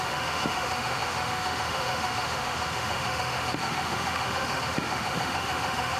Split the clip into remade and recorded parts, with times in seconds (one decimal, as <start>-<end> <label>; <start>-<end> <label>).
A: 0.0-6.0 remade